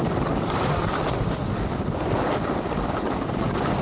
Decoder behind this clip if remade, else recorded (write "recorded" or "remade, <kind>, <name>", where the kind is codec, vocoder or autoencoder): recorded